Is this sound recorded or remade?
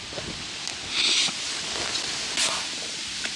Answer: recorded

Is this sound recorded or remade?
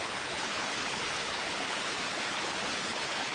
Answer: remade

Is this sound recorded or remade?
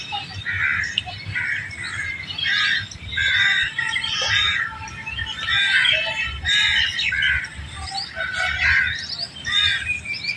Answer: remade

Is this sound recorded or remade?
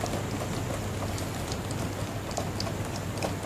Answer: recorded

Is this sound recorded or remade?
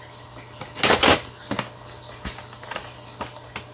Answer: recorded